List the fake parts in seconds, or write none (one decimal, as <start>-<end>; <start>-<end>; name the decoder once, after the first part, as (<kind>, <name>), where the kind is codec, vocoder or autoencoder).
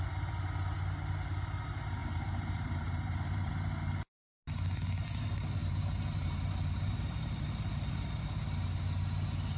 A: 2.0-3.5 (vocoder, BigVGAN v2); 5.6-8.1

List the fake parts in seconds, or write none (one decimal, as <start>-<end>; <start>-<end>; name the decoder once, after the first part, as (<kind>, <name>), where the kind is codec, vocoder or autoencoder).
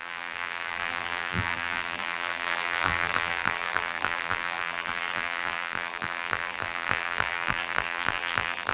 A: 0.0-8.7 (vocoder, BigVGAN v2)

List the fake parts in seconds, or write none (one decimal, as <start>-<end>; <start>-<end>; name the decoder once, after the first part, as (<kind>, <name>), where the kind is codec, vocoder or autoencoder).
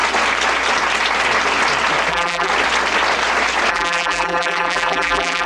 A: 2.1-2.5 (vocoder, BigVGAN v2); 3.7-5.5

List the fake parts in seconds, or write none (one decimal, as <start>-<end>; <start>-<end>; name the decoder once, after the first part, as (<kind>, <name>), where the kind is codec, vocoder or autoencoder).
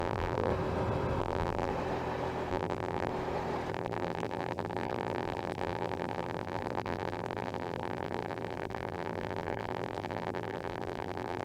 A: 0.0-0.5 (vocoder, BigVGAN v2); 1.2-1.7; 2.5-3.1; 3.7-11.4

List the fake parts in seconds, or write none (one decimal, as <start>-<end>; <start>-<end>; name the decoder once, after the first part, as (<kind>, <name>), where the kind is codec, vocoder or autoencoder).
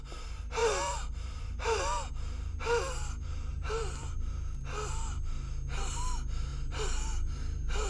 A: 0.6-2.1 (vocoder, BigVGAN v2); 3.5-4.3